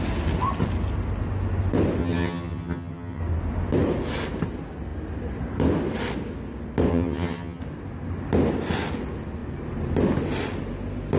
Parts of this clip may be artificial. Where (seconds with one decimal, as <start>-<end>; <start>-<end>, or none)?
2.0-3.2; 6.9-7.6